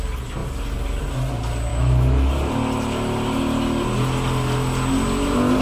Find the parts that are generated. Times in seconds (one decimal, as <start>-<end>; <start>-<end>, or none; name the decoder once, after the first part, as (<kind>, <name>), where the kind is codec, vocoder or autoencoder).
1.7-2.3 (autoencoder, DAC-VAE)